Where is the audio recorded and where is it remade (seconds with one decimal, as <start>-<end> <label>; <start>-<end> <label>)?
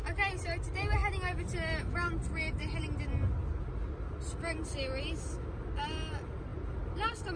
0.0-7.4 recorded